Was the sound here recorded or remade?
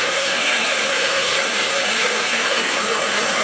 remade